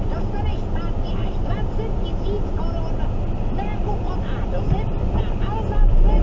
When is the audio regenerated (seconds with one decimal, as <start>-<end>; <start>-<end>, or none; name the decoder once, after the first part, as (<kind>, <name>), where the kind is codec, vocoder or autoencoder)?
none

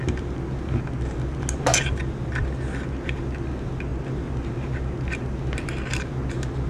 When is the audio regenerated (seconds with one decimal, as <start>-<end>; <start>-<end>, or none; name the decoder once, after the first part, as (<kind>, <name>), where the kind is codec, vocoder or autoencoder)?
none

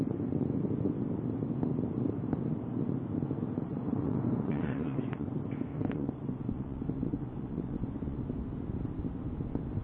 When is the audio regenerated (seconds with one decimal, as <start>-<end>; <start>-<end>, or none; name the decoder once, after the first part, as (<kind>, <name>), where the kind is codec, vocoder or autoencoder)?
3.7-5.3 (vocoder, Vocos); 5.7-8.2

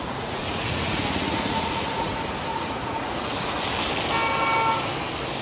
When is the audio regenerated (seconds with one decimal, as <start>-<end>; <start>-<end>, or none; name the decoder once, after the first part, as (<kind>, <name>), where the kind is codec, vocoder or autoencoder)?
0.0-2.1 (vocoder, Vocos); 2.5-3.6

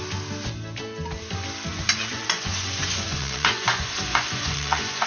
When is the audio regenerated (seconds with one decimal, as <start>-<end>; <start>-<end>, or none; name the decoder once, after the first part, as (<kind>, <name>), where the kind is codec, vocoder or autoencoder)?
1.7-5.1 (vocoder, Vocos)

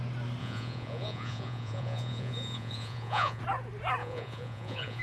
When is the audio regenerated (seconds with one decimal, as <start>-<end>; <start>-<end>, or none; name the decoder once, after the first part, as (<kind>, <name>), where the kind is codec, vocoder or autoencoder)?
0.4-3.4 (vocoder, Vocos); 4.0-5.0

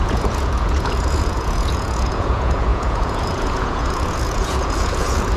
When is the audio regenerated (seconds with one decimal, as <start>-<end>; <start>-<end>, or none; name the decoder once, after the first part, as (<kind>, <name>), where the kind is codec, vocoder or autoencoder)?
0.0-5.4 (vocoder, Vocos)

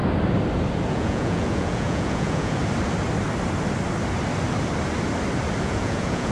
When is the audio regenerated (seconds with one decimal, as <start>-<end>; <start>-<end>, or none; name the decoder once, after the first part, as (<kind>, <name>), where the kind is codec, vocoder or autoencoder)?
0.9-2.6 (vocoder, Vocos); 5.6-6.3